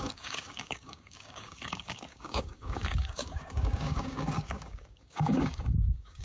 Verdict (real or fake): fake